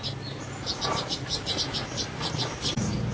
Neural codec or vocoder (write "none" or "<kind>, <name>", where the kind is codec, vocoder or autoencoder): none